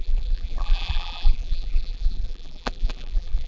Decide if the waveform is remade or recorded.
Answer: remade